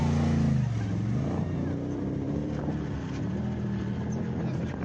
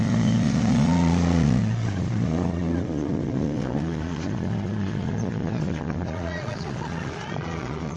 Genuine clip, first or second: first